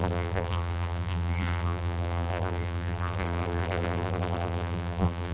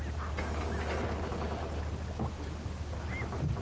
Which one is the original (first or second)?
second